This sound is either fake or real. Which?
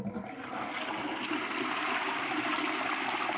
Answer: real